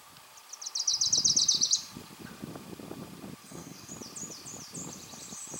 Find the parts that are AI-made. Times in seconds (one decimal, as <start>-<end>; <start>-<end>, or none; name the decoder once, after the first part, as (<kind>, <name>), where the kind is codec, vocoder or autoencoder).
3.4-3.9 (codec, SNAC)